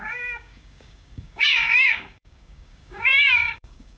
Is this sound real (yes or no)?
no